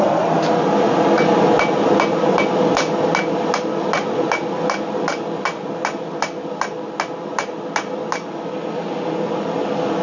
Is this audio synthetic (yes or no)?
no